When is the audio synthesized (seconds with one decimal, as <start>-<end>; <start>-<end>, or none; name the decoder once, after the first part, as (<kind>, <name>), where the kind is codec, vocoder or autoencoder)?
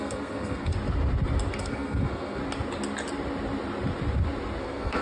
0.0-0.7 (codec, SNAC); 1.6-2.4; 4.6-5.0